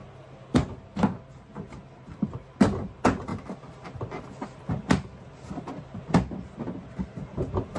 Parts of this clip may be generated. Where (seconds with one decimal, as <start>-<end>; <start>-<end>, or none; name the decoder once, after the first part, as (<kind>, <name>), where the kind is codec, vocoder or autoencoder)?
none